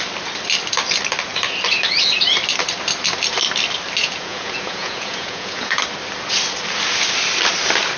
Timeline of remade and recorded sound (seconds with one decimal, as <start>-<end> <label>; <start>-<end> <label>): 0.0-4.0 recorded; 4.0-5.8 remade; 5.8-8.0 recorded